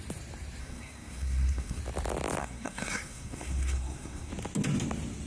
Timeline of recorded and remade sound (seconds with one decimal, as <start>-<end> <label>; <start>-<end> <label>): 0.0-0.6 recorded; 0.6-1.8 remade; 1.8-2.4 recorded; 2.4-4.3 remade; 4.3-5.3 recorded